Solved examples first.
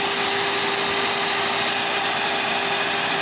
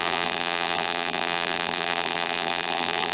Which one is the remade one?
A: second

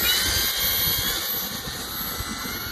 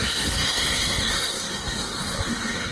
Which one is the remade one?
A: second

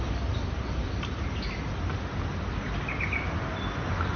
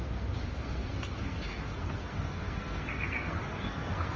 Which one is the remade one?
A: second